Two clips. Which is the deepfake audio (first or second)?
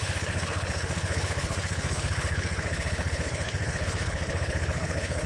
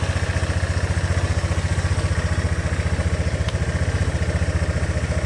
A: first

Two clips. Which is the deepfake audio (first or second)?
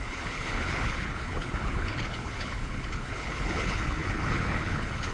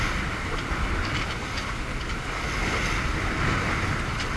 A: first